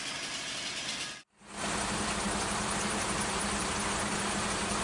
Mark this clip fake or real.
real